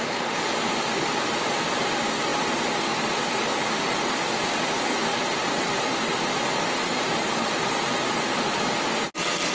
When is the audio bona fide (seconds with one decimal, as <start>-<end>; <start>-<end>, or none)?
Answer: 0.0-9.5